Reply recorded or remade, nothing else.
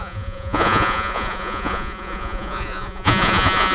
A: remade